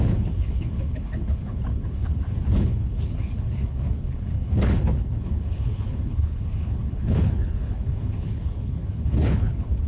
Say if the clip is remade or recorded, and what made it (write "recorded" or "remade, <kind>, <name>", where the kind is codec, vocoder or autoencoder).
remade, codec, HILCodec